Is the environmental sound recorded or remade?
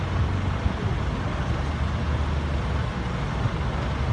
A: recorded